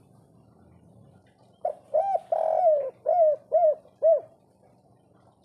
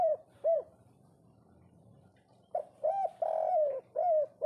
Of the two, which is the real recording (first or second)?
first